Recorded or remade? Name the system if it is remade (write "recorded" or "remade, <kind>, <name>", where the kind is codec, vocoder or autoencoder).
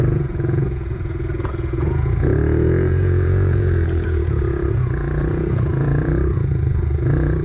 remade, vocoder, Vocos